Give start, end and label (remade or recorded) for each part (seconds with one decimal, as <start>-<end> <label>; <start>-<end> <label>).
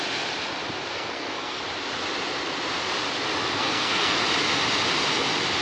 0.0-0.9 recorded; 0.9-1.6 remade; 1.6-3.6 recorded; 3.6-4.2 remade; 4.2-5.6 recorded